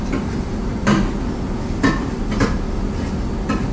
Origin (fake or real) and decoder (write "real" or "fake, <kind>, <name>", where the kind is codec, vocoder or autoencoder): real